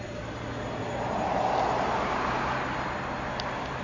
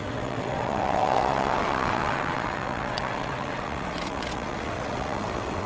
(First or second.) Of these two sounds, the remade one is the second